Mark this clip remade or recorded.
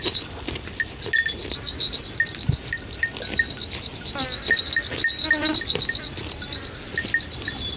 recorded